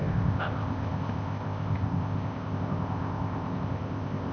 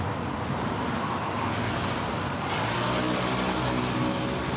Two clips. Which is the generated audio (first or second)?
first